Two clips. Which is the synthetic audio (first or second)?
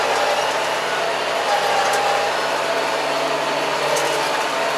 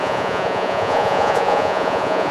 second